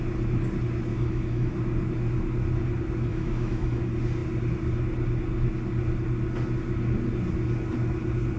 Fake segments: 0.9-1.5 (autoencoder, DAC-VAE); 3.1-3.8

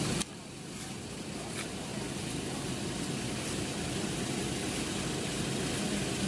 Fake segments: none